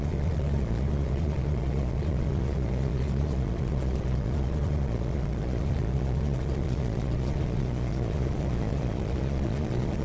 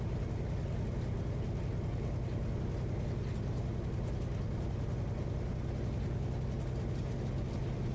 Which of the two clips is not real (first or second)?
first